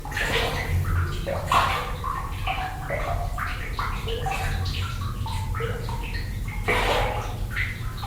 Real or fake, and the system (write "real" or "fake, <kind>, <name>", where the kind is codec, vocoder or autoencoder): real